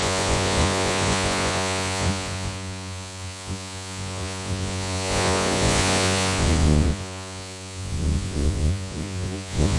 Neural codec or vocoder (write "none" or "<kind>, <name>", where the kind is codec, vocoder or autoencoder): vocoder, Vocos